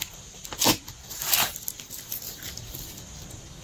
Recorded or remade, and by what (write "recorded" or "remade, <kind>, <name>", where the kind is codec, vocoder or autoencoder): recorded